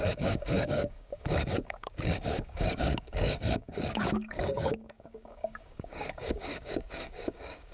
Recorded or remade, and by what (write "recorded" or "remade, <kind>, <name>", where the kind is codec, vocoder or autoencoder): remade, codec, DAC